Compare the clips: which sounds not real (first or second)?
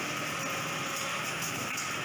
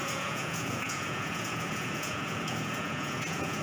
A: second